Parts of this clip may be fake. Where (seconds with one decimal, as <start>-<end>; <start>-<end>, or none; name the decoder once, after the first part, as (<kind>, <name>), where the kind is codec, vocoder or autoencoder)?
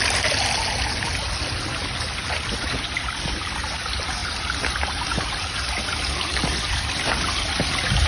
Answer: none